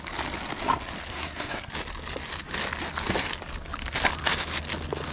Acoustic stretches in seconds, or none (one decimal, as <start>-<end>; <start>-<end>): 0.0-1.1; 1.7-5.1

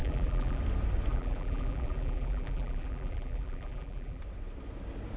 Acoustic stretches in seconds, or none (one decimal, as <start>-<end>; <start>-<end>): 0.6-1.1; 4.2-5.2

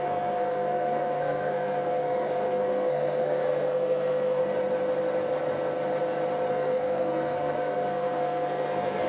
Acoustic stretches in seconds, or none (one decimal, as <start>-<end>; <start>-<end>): 4.4-6.5